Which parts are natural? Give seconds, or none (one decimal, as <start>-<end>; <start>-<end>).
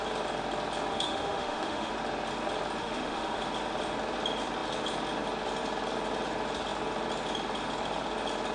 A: 0.0-0.9; 1.9-2.8; 3.4-8.5